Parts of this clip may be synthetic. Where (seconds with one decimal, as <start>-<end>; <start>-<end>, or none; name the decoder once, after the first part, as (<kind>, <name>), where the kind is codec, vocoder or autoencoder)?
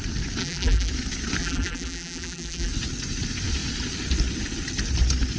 0.4-0.9 (vocoder, BigVGAN v2); 1.4-2.7